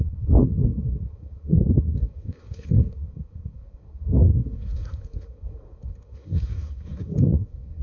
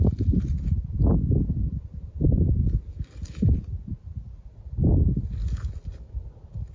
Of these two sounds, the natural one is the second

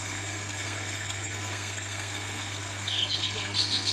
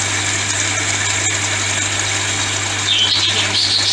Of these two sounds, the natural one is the second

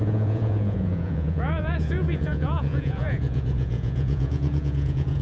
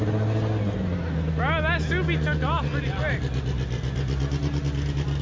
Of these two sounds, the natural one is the second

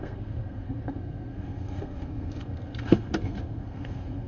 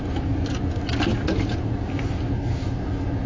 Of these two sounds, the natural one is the second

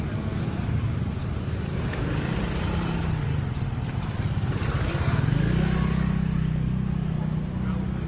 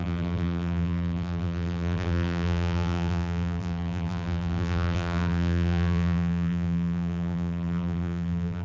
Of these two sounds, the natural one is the first